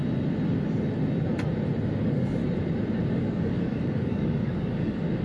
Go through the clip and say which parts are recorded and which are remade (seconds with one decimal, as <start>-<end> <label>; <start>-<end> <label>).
0.0-2.0 recorded; 2.0-2.4 remade; 2.4-3.1 recorded; 3.1-5.2 remade